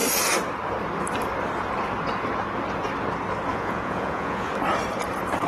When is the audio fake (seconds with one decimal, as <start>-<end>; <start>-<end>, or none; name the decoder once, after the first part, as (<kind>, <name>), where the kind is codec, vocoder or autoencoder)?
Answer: 3.5-4.5 (vocoder, Vocos)